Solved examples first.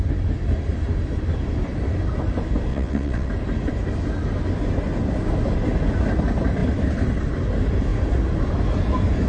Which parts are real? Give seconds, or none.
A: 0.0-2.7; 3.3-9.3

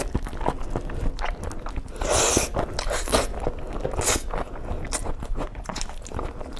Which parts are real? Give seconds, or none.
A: 0.0-5.0; 5.8-6.6

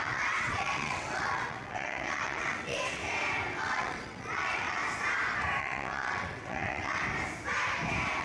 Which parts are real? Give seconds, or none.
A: 3.0-3.6; 4.8-5.6; 7.0-8.2

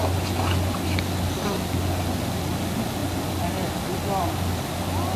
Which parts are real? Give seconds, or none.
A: 0.0-5.2

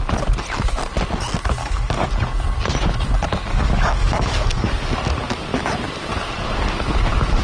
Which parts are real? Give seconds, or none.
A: 0.0-1.6; 2.1-3.5; 4.7-7.4

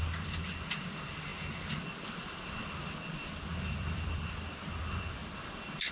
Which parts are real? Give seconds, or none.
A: 5.2-5.9

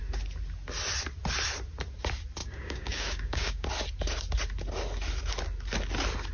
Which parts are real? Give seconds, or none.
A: 0.0-2.4; 3.7-6.3